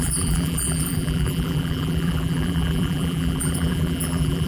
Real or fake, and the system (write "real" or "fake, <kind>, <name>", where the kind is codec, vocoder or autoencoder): fake, vocoder, BigVGAN v2